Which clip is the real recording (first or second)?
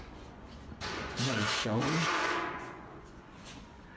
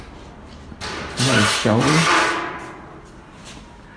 second